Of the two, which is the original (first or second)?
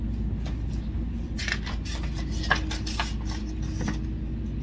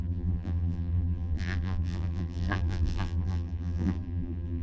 first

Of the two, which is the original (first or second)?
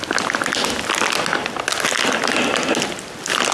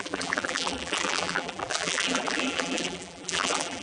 first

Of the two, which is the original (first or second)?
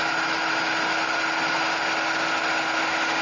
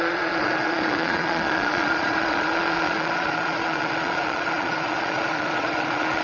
first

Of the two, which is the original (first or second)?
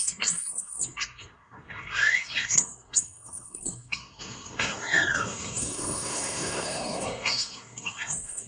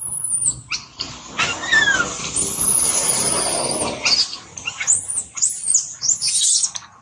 second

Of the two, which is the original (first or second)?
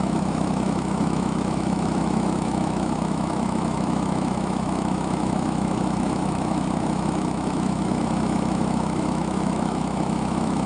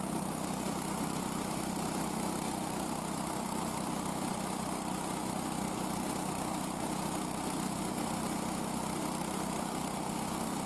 second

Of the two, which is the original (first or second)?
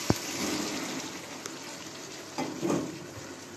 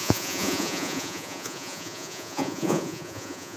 first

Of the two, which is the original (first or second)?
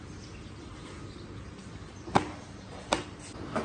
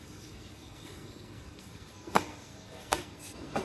first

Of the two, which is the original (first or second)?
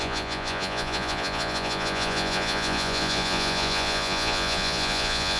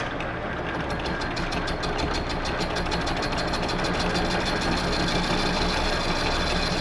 second